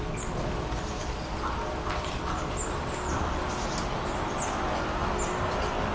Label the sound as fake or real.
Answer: real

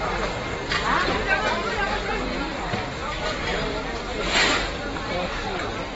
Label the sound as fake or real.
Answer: real